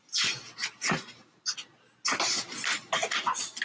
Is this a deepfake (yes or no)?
no